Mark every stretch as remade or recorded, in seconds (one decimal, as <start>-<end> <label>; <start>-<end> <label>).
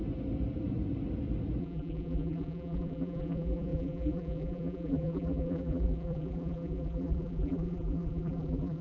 0.0-1.6 recorded; 1.6-8.8 remade